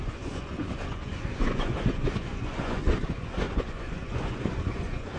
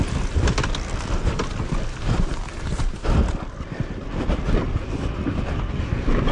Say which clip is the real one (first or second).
second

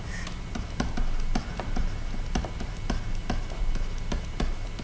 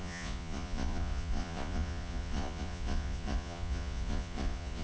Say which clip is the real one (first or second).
first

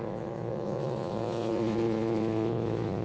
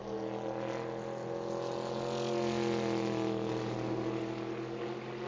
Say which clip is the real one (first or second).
second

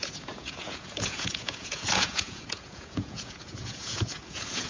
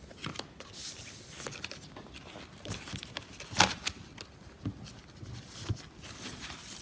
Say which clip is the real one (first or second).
second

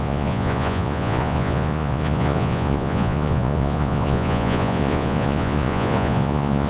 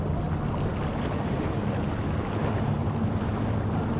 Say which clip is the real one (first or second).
second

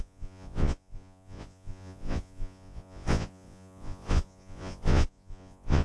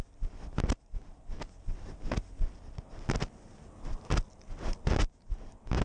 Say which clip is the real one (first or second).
second